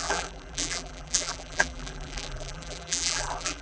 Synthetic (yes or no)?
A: yes